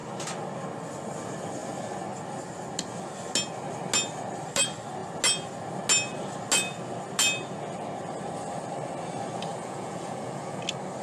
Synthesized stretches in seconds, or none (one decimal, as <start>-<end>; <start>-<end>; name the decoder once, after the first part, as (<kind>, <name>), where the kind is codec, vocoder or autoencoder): 9.5-10.6 (vocoder, Vocos)